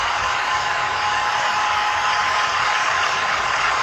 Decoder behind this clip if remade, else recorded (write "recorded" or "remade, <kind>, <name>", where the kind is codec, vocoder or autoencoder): remade, codec, DAC